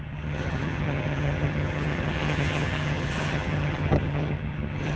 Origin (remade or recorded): remade